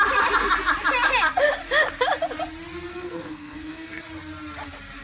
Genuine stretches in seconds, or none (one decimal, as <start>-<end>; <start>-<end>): 0.0-2.9; 4.0-5.0